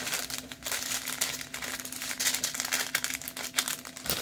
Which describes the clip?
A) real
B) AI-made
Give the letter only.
A